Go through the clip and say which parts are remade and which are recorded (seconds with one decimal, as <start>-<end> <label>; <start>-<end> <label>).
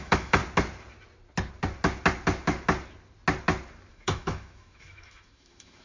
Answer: 0.0-0.4 remade; 0.4-3.9 recorded; 3.9-5.8 remade